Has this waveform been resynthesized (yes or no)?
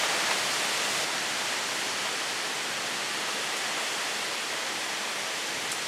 no